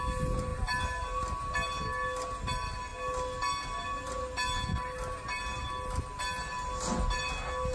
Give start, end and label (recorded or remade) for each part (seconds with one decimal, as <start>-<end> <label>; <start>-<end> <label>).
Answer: 0.0-7.7 recorded